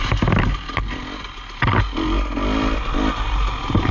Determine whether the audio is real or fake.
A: real